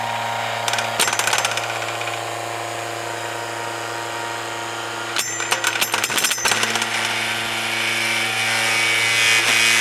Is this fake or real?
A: real